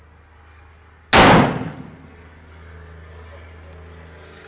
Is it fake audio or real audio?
real